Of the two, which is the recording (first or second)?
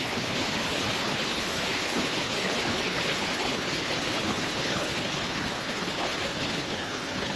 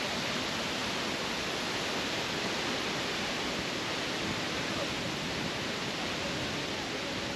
second